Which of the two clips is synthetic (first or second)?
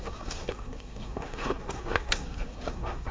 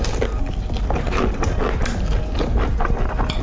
first